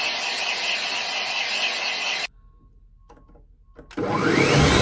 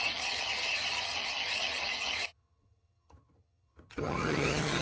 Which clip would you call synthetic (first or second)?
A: second